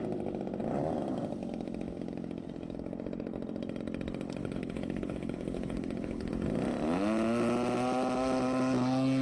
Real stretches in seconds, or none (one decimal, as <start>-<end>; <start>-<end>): 0.0-4.4; 6.3-9.2